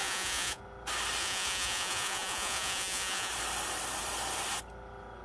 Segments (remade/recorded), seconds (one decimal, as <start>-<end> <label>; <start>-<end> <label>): 0.0-0.6 remade; 0.6-1.2 recorded; 1.2-3.3 remade; 3.3-5.2 recorded